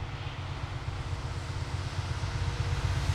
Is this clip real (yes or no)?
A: yes